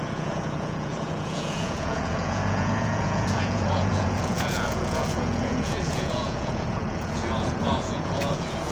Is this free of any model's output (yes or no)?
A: no